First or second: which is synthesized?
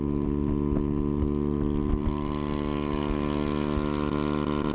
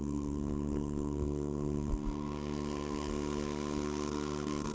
second